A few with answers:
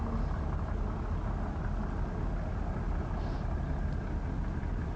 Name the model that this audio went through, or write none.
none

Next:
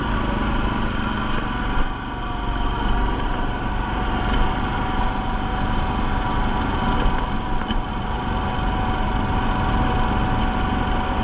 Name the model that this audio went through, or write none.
none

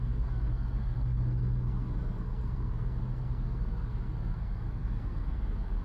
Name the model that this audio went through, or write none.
codec, SNAC